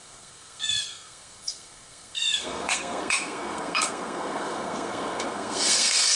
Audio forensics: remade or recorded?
remade